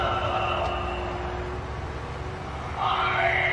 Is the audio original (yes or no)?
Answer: yes